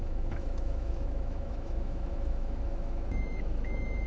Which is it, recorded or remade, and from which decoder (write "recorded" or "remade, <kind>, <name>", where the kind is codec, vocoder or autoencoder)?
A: remade, autoencoder, DAC-VAE